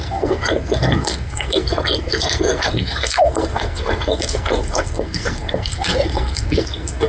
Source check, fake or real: fake